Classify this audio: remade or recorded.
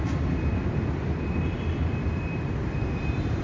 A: remade